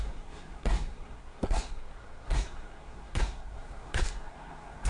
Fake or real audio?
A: fake